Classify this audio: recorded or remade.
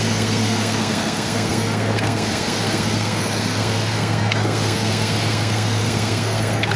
remade